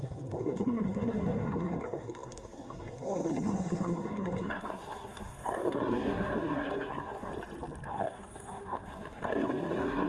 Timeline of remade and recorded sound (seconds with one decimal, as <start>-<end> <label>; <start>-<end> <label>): 0.0-7.3 remade; 7.3-7.9 recorded; 7.9-10.1 remade